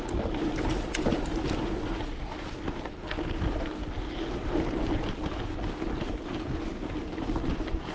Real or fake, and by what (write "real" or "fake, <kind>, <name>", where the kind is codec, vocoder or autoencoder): real